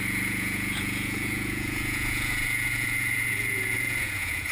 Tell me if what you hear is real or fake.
fake